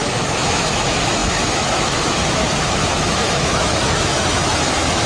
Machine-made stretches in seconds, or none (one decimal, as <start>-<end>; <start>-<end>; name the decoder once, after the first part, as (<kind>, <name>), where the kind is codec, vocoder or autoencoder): 0.0-5.1 (autoencoder, DAC-VAE)